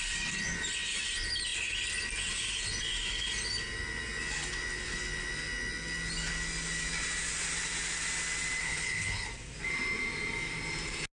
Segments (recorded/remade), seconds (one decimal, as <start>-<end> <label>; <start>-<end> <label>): 0.0-8.6 recorded; 8.6-9.3 remade; 9.3-11.2 recorded